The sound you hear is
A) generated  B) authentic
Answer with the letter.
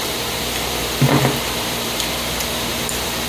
A